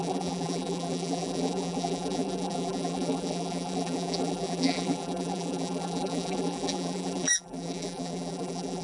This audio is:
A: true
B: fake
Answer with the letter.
B